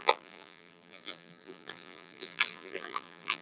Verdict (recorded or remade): remade